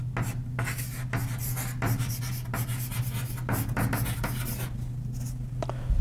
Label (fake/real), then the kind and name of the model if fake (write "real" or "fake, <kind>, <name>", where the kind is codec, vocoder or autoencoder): real